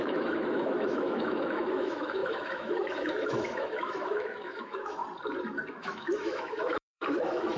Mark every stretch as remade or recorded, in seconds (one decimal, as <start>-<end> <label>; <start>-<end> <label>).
0.0-5.0 remade; 5.0-5.7 recorded; 5.7-7.6 remade